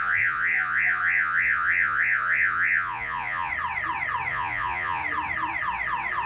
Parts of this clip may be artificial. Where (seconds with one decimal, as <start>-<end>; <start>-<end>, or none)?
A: 0.0-3.5; 4.3-5.0